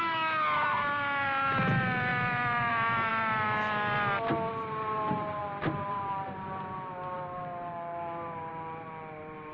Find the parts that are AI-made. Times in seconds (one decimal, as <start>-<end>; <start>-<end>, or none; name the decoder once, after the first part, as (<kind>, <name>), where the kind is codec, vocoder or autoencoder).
none